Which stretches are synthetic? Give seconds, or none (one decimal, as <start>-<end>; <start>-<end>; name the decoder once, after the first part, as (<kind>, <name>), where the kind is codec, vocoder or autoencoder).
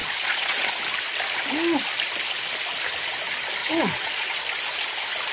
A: 0.0-0.7 (vocoder, Vocos); 3.6-4.4